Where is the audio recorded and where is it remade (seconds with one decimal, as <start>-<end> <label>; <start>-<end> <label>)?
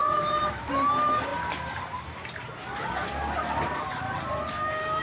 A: 0.0-5.0 recorded